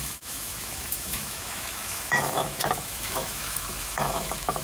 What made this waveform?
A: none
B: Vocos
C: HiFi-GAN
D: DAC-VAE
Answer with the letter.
D